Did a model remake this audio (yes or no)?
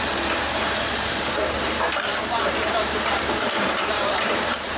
yes